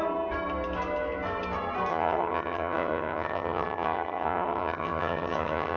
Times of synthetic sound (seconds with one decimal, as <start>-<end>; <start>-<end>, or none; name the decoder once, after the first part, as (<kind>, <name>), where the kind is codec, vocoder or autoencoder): 1.9-5.8 (vocoder, HiFi-GAN)